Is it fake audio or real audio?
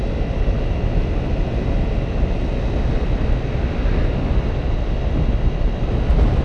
real